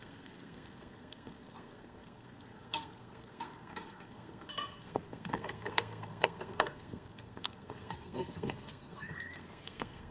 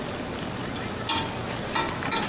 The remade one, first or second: first